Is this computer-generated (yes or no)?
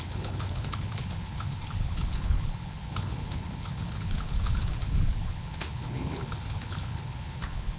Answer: yes